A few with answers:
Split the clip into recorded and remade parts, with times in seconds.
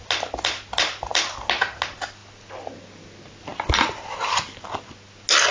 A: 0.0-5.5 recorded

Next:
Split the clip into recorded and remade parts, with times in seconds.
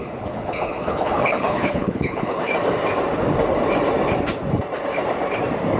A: 0.0-2.5 remade; 2.5-5.8 recorded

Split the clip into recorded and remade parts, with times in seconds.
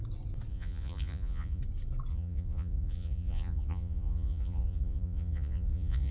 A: 0.0-0.5 recorded; 0.5-1.6 remade; 1.6-2.1 recorded; 2.1-6.1 remade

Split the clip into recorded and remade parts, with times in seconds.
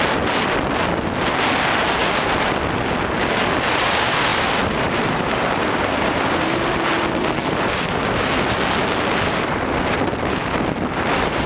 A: 0.0-4.3 recorded; 4.3-6.2 remade; 6.2-7.4 recorded; 7.4-8.0 remade; 8.0-11.5 recorded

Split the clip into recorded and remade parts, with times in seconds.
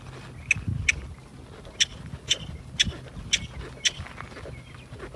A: 0.0-5.2 recorded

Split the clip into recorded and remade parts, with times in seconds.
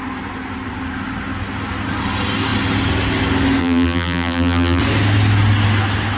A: 0.0-3.6 recorded; 3.6-4.8 remade; 4.8-6.2 recorded